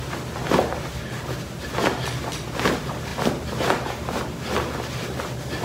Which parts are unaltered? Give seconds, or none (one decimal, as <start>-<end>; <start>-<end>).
0.0-5.6